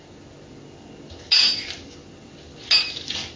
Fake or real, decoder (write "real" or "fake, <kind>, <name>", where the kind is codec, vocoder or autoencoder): real